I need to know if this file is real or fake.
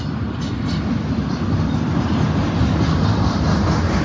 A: real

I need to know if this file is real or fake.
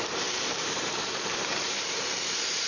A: fake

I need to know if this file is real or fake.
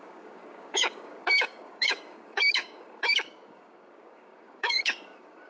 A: fake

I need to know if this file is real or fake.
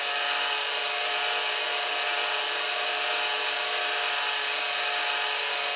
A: real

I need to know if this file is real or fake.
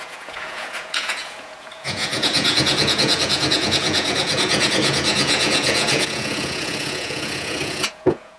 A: fake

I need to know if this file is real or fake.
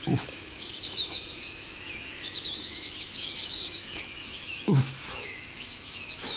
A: fake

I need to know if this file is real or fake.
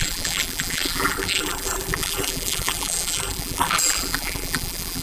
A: fake